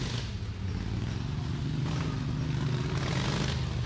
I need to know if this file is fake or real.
real